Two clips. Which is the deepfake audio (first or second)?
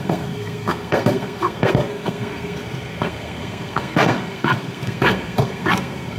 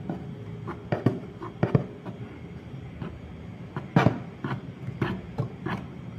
first